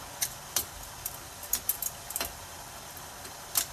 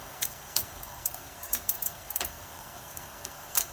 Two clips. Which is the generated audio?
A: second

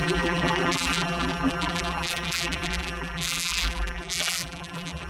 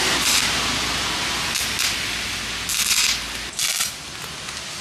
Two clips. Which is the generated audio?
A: first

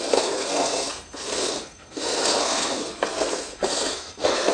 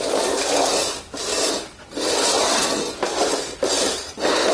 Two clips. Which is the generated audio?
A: first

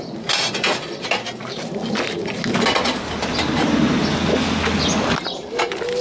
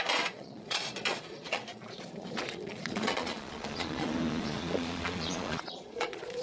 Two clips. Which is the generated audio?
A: second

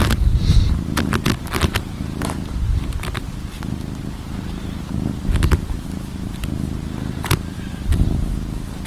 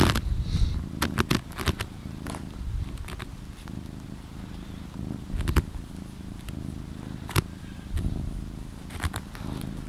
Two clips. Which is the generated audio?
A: first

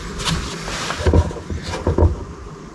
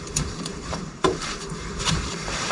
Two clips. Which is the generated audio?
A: second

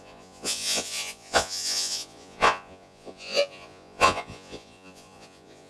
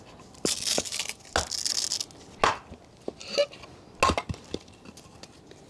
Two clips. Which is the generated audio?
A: first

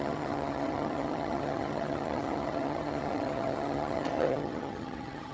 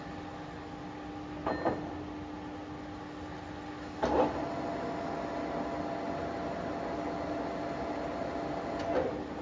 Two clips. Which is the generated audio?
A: first